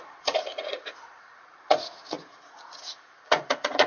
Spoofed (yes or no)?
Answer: yes